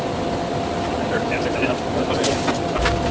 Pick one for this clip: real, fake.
real